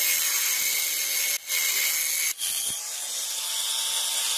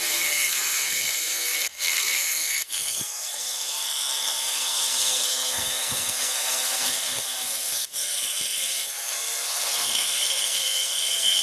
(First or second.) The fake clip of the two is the second